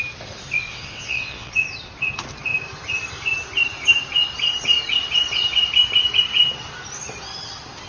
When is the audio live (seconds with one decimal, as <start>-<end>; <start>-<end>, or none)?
0.0-0.7; 1.5-7.9